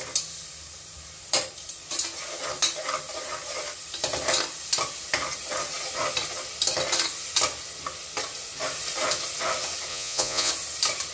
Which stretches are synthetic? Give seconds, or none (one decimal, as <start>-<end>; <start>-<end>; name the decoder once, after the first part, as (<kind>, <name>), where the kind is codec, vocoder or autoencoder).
9.9-10.5 (vocoder, Vocos)